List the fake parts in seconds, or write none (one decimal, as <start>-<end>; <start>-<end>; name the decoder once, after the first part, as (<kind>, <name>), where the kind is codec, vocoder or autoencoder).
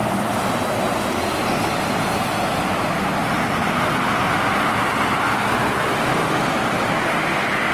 none